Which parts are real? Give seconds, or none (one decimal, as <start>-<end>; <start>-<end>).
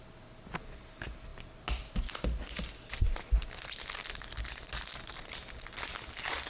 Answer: 0.0-6.5